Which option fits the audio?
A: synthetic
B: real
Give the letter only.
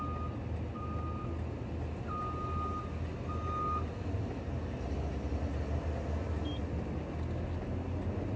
B